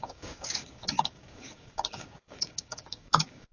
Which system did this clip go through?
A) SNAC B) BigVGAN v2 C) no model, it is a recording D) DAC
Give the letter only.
D